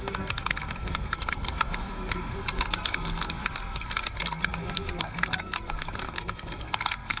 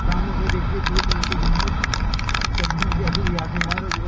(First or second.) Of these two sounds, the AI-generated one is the first